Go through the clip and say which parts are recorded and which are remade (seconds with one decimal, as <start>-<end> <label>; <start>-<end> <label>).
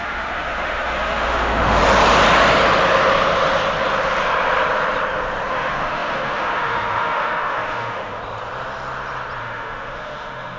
0.0-1.8 remade; 1.8-5.5 recorded; 5.5-8.2 remade; 8.2-9.4 recorded; 9.4-10.6 remade